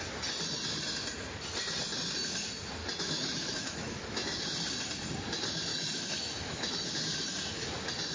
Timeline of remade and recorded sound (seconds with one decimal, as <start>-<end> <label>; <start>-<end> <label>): 0.0-2.8 recorded; 2.8-4.4 remade; 4.4-5.7 recorded; 5.7-6.9 remade; 6.9-8.1 recorded